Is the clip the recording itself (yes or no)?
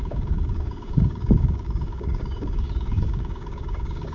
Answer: no